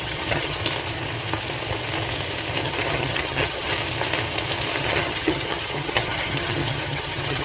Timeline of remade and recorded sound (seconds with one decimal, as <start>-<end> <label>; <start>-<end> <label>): 0.0-0.6 remade; 0.6-2.6 recorded; 2.6-3.7 remade; 3.7-4.8 recorded; 4.8-7.4 remade